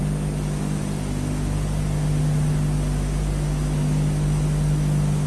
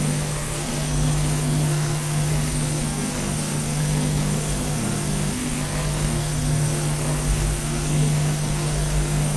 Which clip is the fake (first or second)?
second